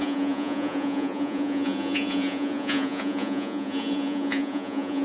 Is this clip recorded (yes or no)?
no